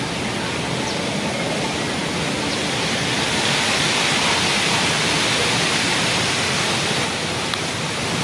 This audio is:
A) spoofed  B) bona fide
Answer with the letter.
B